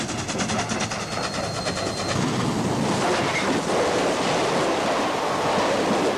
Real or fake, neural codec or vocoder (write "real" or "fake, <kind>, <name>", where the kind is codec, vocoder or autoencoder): real